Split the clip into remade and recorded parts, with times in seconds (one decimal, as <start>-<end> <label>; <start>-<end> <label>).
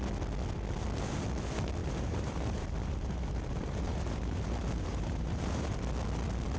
0.0-1.8 recorded; 1.8-5.8 remade; 5.8-6.6 recorded